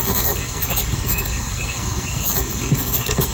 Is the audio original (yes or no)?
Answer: no